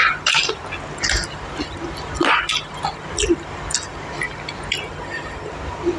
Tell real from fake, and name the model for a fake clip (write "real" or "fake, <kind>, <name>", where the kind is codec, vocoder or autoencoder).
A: real